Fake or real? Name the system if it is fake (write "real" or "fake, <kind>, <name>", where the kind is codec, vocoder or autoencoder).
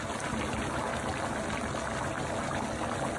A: real